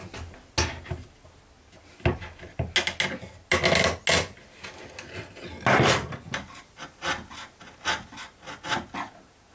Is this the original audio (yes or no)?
yes